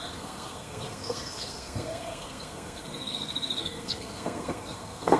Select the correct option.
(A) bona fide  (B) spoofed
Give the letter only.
B